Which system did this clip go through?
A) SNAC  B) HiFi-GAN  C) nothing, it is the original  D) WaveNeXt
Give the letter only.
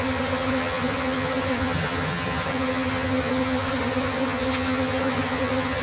B